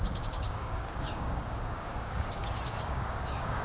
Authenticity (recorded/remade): remade